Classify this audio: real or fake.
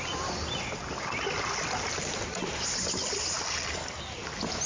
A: real